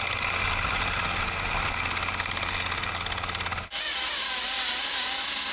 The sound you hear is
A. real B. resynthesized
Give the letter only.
A